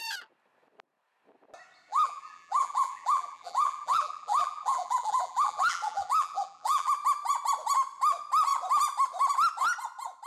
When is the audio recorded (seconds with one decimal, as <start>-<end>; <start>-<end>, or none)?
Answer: 0.0-1.9; 6.9-10.3